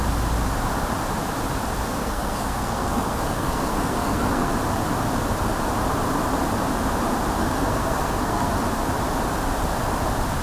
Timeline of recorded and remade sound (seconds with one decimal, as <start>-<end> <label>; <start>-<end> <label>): 0.0-2.0 recorded; 2.0-4.5 remade; 4.5-7.4 recorded; 7.4-8.5 remade; 8.5-10.4 recorded